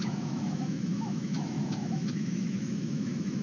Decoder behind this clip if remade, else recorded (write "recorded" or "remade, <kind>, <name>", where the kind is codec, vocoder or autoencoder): remade, autoencoder, DAC-VAE